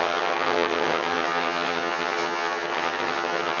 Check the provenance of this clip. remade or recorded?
remade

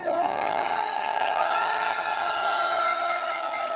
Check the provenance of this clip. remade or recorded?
remade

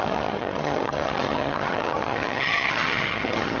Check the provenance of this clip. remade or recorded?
remade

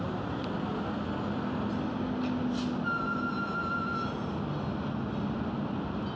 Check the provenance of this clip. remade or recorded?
recorded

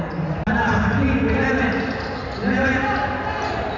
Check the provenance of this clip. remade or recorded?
recorded